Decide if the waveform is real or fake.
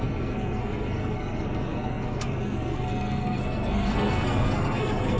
fake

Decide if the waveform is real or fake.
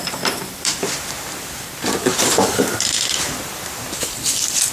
fake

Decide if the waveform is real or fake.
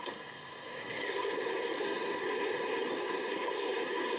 fake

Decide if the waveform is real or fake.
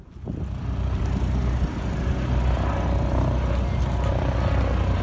real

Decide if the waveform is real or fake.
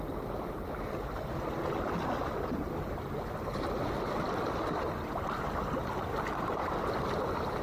real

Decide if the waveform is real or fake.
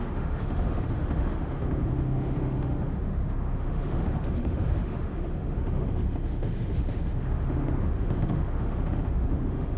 fake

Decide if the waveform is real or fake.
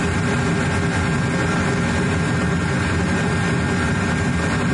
real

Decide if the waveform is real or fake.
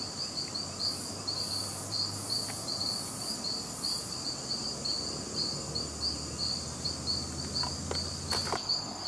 real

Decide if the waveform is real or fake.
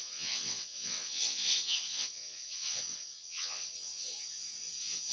fake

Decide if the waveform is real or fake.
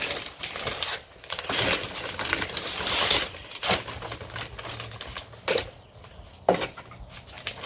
real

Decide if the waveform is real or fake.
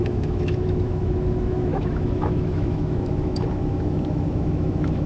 fake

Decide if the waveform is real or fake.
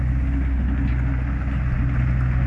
real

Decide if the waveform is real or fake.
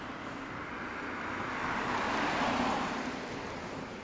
real